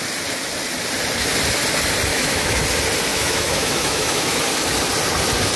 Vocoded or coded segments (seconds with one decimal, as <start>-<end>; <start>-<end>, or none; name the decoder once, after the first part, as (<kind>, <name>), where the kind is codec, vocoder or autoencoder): 2.1-2.6 (autoencoder, DAC-VAE); 3.1-4.4